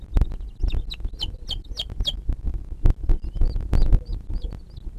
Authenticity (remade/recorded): recorded